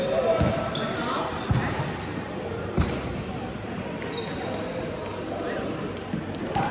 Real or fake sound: real